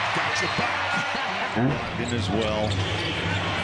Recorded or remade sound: recorded